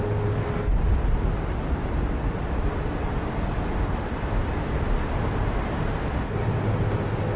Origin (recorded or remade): recorded